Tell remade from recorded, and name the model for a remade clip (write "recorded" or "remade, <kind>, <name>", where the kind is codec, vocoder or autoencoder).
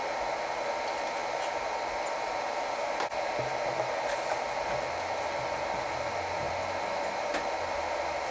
recorded